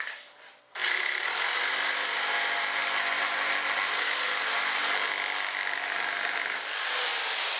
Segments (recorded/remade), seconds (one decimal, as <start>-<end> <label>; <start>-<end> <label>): 0.0-7.6 recorded